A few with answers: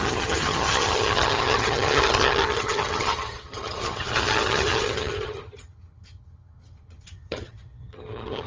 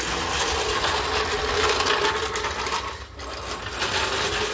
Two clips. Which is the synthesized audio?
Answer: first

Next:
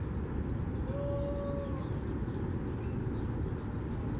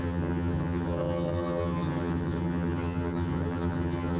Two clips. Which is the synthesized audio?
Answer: second